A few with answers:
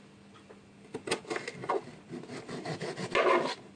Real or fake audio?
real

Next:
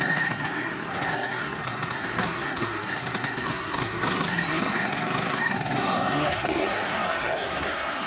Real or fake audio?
fake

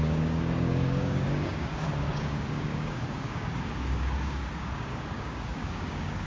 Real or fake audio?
fake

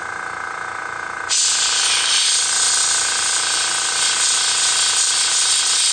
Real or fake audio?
real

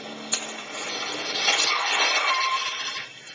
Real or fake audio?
real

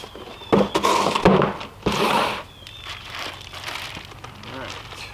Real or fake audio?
real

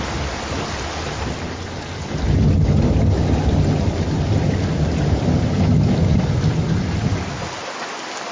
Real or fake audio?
real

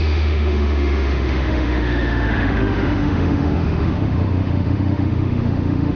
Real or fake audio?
fake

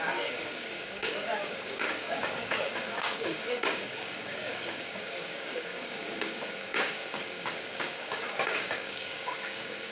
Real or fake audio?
fake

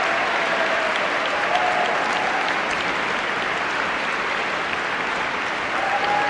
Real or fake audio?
real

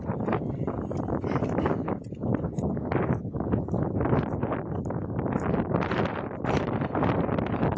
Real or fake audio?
real